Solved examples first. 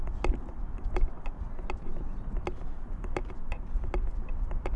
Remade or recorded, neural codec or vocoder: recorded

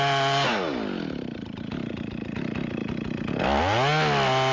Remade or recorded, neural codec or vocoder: recorded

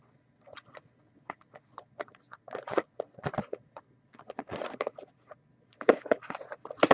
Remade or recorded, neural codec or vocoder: remade, vocoder, Vocos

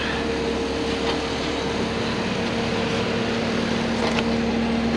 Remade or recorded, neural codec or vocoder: recorded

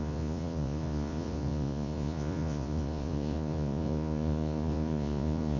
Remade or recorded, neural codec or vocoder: remade, vocoder, Vocos